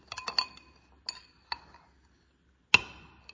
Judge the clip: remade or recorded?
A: recorded